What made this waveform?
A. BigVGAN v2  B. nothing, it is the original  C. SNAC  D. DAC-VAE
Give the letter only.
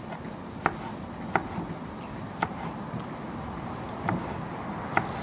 B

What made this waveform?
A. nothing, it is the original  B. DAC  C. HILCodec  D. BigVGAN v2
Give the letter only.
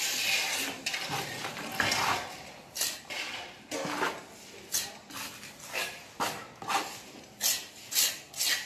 A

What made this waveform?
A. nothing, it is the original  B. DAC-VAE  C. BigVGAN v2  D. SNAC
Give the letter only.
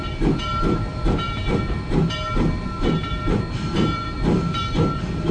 C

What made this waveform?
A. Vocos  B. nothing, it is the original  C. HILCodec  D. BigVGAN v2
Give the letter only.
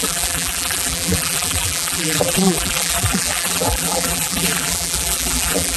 D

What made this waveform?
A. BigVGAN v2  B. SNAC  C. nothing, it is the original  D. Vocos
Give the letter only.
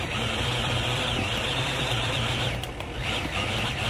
A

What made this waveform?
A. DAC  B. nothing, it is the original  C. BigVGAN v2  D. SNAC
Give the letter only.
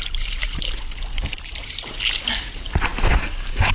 C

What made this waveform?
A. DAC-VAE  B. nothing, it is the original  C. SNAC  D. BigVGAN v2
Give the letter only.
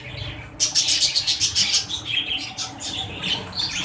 B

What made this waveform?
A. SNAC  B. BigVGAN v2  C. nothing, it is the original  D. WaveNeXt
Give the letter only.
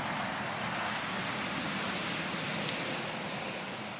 C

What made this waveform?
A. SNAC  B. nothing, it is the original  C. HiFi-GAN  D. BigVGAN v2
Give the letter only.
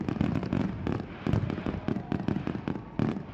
B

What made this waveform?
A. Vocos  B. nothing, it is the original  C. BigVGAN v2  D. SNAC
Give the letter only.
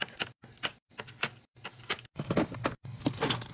B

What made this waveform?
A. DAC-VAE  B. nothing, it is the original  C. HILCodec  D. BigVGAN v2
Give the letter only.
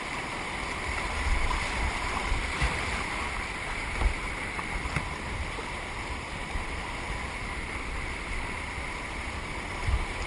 D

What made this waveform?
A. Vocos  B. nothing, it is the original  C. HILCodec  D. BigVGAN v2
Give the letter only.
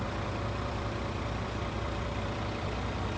D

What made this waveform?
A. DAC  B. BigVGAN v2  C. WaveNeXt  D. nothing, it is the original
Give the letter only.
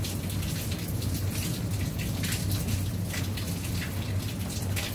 D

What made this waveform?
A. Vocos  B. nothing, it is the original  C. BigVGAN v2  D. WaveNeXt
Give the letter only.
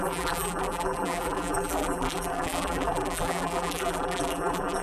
C